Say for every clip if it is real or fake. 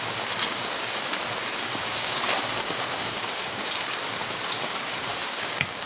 fake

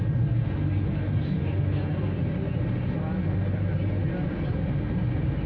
real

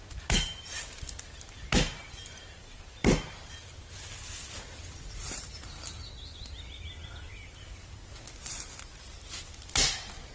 real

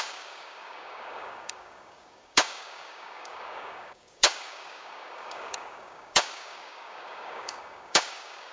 fake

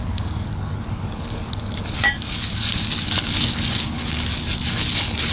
fake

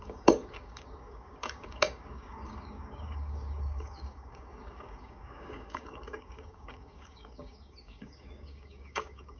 fake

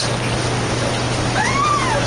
real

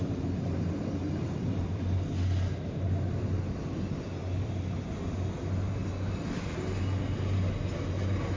real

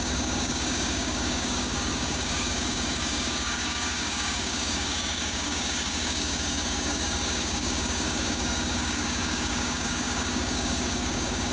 fake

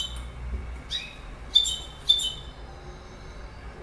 real